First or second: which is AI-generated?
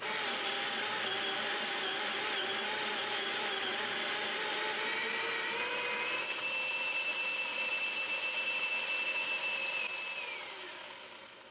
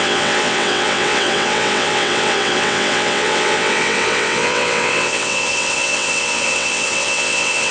second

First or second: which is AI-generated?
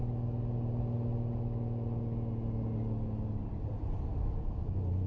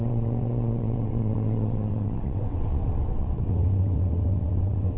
second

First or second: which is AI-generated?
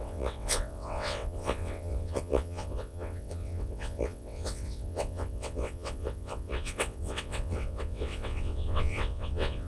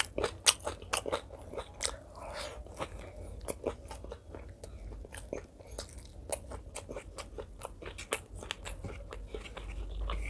first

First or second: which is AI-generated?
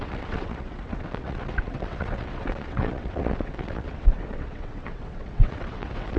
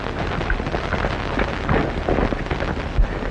first